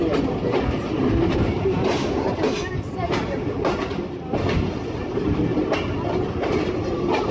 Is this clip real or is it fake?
real